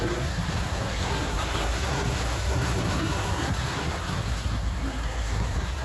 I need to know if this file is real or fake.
fake